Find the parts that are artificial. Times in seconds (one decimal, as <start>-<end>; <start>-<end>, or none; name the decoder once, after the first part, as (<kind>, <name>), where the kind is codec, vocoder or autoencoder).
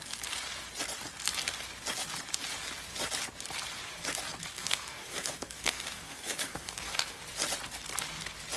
4.5-7.2 (codec, SNAC)